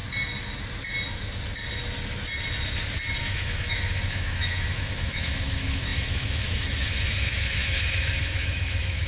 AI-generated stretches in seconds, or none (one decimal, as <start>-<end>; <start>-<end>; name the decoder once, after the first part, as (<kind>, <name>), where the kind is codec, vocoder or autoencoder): 3.2-9.1 (autoencoder, DAC-VAE)